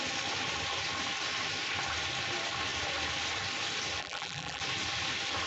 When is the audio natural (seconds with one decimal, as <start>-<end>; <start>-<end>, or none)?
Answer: 0.0-4.0; 4.6-5.5